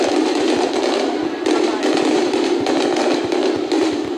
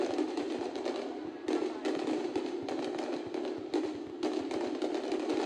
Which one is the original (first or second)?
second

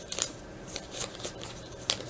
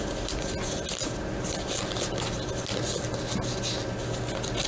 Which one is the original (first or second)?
second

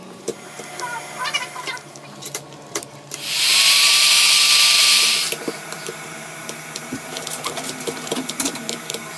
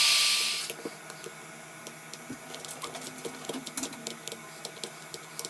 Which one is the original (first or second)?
second